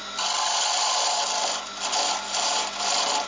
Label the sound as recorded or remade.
recorded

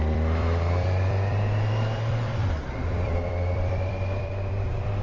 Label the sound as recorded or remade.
remade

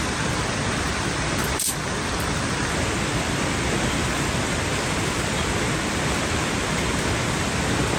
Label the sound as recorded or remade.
remade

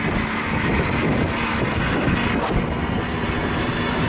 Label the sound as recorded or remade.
recorded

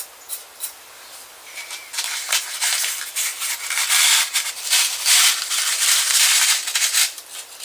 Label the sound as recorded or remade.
remade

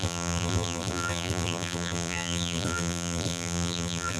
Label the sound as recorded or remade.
remade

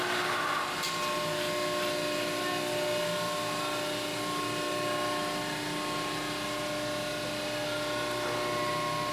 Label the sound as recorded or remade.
recorded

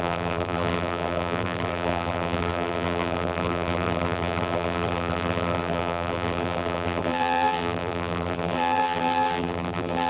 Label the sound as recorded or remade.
remade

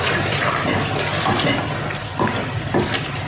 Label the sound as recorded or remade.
remade